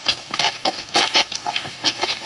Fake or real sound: fake